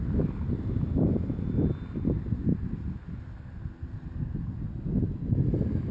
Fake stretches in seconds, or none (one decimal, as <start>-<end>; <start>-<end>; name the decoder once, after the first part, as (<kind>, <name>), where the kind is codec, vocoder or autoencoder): none